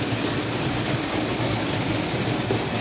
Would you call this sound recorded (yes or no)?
yes